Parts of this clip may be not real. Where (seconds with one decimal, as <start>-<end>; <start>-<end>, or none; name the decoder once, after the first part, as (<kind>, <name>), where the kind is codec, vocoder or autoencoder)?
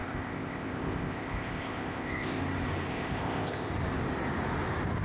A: 0.0-2.4 (codec, ZipCodec); 2.9-3.7